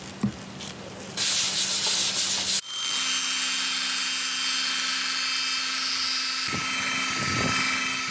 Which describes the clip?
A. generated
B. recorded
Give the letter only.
B